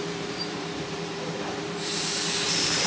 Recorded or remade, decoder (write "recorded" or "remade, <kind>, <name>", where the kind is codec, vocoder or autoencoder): remade, vocoder, BigVGAN v2